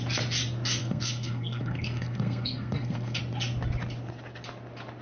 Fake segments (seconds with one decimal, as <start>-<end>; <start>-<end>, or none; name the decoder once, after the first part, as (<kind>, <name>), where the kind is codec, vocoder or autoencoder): 0.8-3.2 (codec, SNAC)